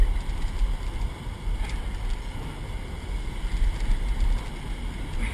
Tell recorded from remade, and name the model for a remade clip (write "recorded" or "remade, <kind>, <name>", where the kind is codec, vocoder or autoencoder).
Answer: recorded